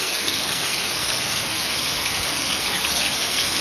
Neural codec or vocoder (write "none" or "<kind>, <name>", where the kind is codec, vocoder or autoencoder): codec, SNAC